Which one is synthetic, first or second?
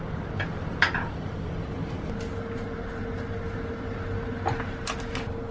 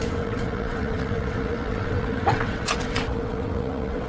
second